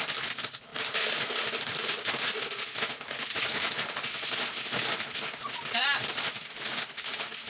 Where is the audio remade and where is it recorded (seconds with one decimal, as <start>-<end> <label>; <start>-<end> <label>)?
0.0-7.5 recorded